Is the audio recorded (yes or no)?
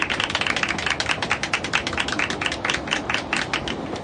yes